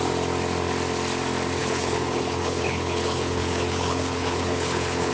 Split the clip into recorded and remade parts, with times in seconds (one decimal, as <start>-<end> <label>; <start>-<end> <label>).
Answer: 0.0-1.6 recorded; 1.6-5.1 remade